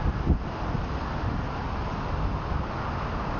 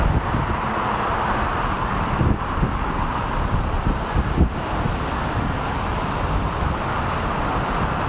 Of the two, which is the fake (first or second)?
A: second